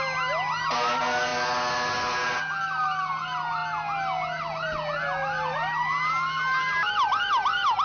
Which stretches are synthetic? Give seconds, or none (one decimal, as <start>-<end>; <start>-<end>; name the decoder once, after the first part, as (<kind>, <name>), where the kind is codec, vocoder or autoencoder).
none